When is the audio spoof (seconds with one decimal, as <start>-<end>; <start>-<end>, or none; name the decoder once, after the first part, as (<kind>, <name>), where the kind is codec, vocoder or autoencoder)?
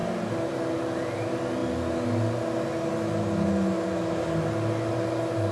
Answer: none